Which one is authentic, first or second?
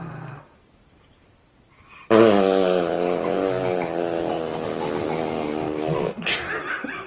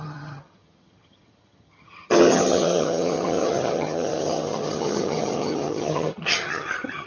first